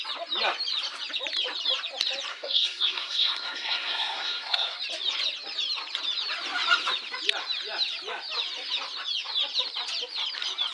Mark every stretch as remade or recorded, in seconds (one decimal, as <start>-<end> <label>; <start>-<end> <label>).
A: 0.0-2.3 recorded; 2.3-4.8 remade; 4.8-10.7 recorded